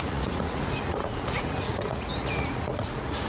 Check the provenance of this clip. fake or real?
fake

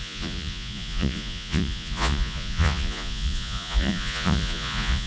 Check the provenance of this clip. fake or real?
fake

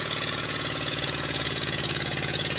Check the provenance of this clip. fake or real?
fake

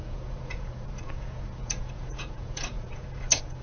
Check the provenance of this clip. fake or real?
fake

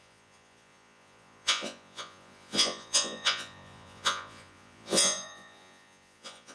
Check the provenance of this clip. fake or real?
fake